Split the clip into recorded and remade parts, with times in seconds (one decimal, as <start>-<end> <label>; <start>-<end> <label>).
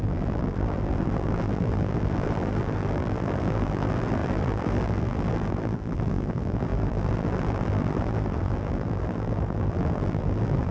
0.0-10.7 remade